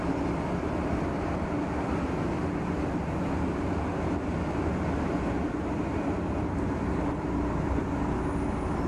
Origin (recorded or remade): recorded